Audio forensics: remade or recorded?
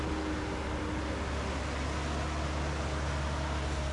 recorded